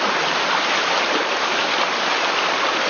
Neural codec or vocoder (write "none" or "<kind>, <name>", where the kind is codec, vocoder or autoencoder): vocoder, BigVGAN v2